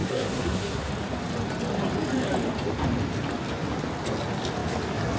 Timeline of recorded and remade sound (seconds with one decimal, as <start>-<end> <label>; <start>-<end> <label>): 0.0-0.9 remade; 0.9-5.2 recorded